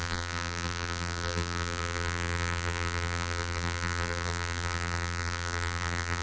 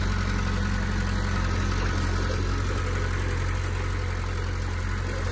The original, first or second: second